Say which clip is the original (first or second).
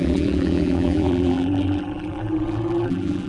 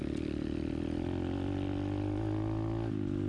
second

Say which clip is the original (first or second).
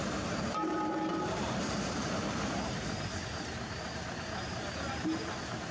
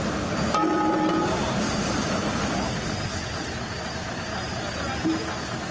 second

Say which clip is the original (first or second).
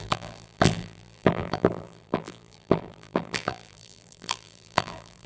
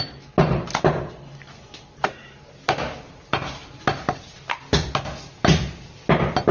second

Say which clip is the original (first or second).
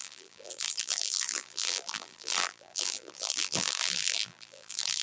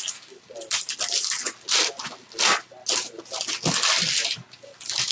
second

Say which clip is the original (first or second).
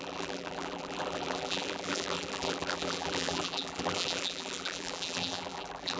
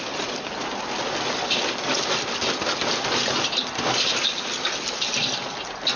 second